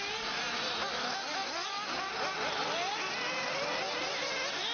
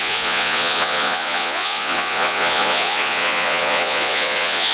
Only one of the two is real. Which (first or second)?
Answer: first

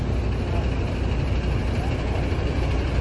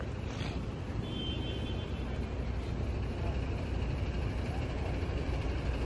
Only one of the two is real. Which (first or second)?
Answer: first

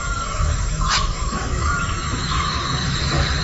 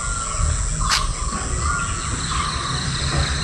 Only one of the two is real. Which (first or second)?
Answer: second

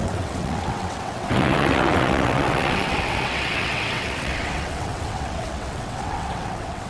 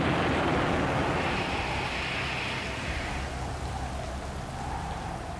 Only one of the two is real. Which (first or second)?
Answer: second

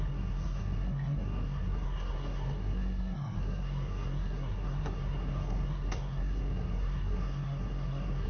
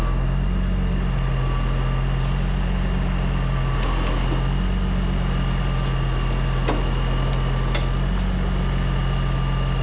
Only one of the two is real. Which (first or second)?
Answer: second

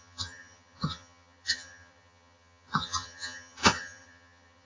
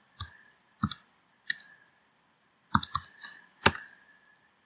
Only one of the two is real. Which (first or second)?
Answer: second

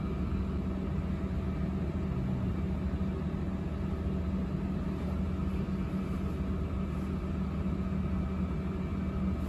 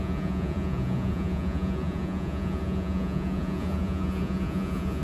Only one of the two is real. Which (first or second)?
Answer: first